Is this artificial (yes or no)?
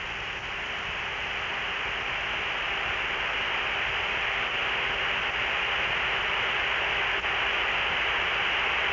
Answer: no